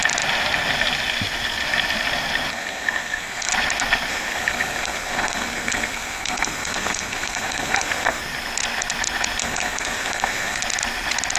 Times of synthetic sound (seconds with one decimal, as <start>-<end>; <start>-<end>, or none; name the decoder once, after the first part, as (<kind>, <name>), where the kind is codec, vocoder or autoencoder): 2.5-3.5 (codec, SNAC); 4.1-8.2; 9.4-10.6